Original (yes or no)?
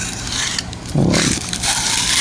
no